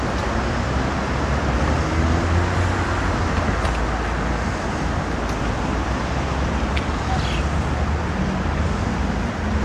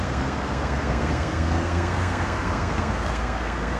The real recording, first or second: first